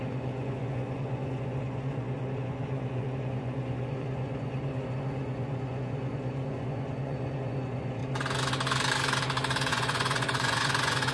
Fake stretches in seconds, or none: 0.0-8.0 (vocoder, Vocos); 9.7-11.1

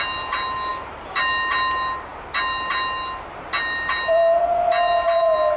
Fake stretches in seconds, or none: none

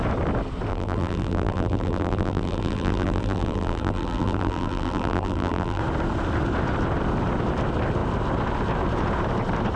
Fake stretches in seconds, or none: 0.7-5.8 (vocoder, BigVGAN v2)

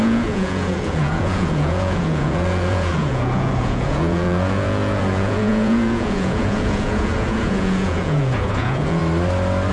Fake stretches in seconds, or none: 0.0-9.0 (vocoder, Vocos)

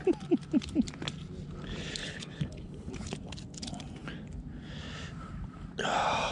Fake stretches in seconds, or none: 2.0-2.9 (codec, HILCodec)

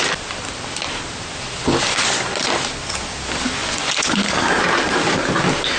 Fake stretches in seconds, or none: 3.6-4.3 (vocoder, Vocos)